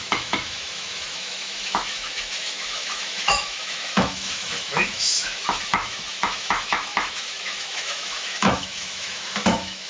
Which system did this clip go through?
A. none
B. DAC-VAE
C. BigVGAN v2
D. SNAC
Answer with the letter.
B